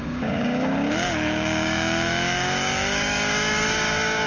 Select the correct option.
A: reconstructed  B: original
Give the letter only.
A